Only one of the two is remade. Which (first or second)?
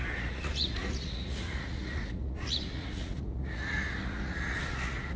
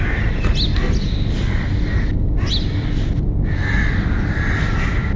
first